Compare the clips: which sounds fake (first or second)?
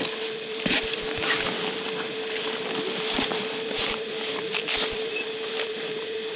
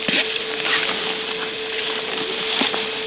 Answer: first